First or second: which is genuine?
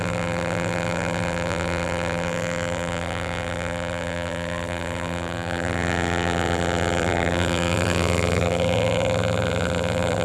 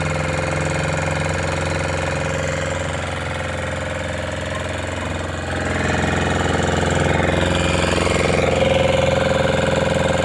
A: second